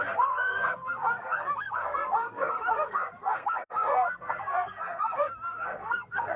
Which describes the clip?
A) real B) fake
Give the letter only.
B